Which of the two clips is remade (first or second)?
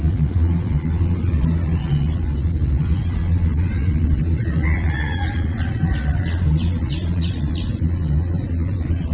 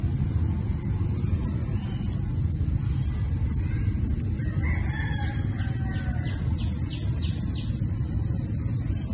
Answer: first